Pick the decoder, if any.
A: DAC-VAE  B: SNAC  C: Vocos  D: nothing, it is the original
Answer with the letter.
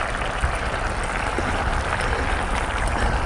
D